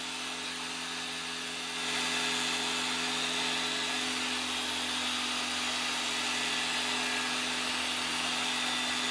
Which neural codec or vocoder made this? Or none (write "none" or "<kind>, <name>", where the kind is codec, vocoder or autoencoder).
none